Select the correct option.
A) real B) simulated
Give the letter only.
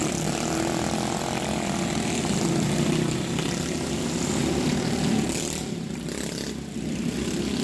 A